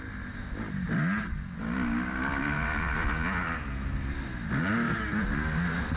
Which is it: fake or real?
real